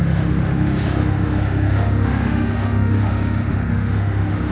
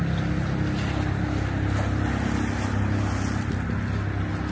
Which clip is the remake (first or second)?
first